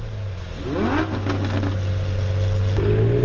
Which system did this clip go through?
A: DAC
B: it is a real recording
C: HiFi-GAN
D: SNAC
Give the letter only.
B